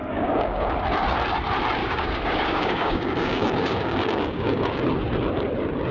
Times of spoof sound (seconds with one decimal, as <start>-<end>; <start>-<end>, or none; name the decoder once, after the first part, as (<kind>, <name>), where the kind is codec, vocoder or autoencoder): 0.0-0.7 (codec, DAC); 1.8-4.8